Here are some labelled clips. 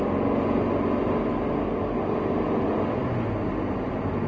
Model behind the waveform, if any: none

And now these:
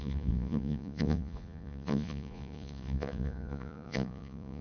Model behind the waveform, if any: vocoder, Vocos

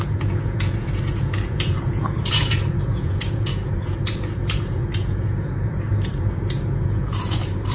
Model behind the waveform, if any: vocoder, Vocos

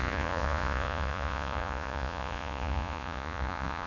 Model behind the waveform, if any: vocoder, Vocos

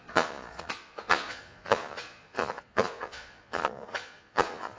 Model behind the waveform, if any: vocoder, Vocos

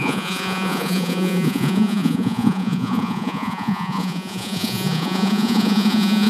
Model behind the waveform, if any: vocoder, Vocos